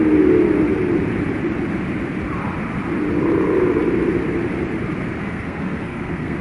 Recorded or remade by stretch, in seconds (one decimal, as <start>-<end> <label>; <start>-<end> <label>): 0.0-5.2 recorded; 5.2-6.4 remade